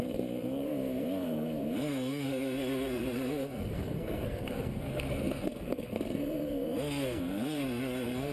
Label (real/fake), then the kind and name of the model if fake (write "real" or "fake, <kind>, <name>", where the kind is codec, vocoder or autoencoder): fake, codec, SNAC